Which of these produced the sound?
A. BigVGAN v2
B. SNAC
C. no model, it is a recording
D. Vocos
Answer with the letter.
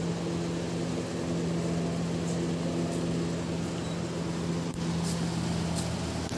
C